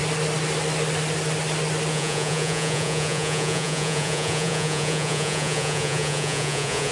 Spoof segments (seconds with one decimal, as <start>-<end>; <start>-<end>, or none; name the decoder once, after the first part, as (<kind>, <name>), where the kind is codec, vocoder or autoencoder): 1.9-6.9 (vocoder, Vocos)